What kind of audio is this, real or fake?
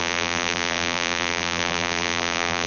fake